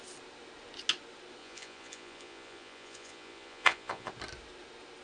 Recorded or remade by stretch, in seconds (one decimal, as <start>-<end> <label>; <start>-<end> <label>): 0.0-1.4 recorded; 1.4-4.1 remade; 4.1-5.0 recorded